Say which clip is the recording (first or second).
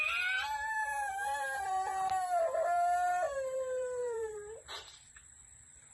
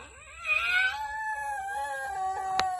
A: second